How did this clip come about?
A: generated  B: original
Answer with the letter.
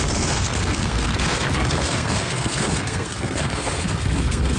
A